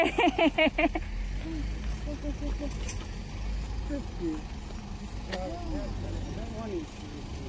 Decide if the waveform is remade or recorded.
recorded